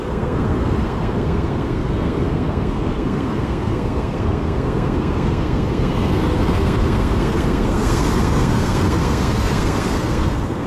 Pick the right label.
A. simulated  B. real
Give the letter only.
A